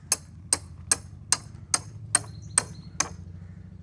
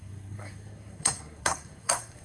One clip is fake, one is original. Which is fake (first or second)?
second